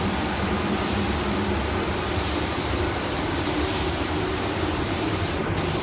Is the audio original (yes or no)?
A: yes